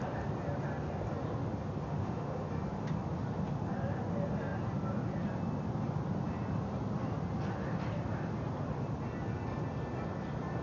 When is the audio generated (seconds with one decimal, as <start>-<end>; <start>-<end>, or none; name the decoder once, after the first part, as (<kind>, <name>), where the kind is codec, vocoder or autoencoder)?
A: 1.9-2.5 (autoencoder, DAC-VAE)